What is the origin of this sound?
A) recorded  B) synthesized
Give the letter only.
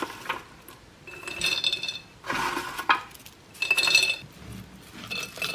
A